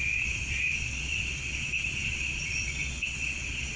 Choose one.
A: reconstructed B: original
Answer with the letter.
A